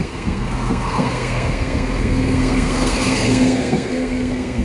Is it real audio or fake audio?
fake